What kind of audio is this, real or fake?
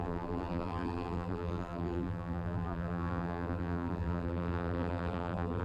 fake